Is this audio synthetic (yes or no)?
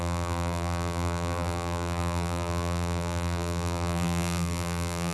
yes